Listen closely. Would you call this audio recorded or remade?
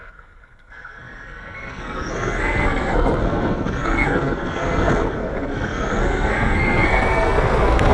remade